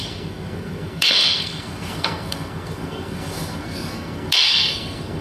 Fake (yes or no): yes